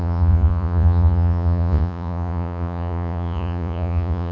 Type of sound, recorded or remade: remade